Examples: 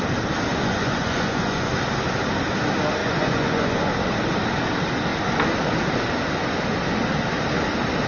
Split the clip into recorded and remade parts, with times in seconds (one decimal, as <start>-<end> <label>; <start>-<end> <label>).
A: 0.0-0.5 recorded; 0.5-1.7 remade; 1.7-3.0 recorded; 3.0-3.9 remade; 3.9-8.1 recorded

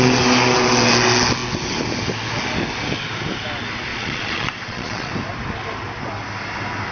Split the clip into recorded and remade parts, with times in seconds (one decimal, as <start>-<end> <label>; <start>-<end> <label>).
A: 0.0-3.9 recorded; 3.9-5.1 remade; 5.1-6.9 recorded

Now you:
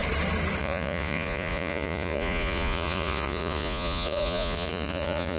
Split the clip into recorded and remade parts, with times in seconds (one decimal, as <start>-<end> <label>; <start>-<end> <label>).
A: 0.0-0.6 recorded; 0.6-5.4 remade